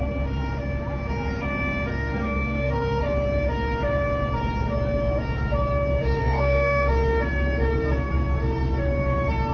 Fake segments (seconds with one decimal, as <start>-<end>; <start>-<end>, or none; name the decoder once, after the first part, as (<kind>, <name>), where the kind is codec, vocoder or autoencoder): 1.9-3.0 (codec, SNAC); 6.2-6.9